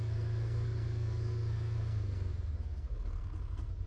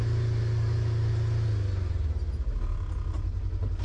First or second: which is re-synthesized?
first